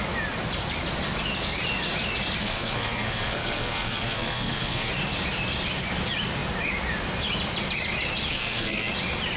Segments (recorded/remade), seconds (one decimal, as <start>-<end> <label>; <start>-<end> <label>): 0.0-2.4 recorded; 2.4-4.9 remade; 4.9-8.3 recorded; 8.3-8.9 remade; 8.9-9.4 recorded